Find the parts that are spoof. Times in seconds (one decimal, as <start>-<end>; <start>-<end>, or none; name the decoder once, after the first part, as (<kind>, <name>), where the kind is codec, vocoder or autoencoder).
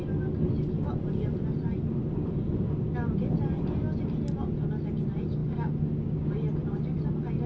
none